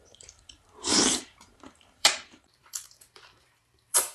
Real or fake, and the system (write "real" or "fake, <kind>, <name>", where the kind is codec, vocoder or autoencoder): fake, vocoder, BigVGAN v2